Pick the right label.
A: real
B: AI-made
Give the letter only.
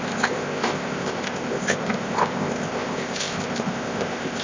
B